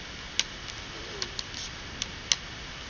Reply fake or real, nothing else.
real